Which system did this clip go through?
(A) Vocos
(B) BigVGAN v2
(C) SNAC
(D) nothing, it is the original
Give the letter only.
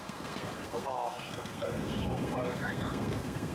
C